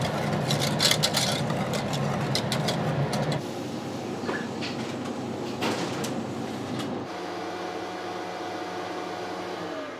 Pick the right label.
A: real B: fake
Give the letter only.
A